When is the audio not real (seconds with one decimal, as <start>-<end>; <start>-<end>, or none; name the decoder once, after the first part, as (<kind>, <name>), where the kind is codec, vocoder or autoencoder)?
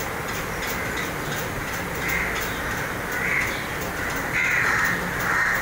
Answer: 1.4-2.2 (vocoder, BigVGAN v2)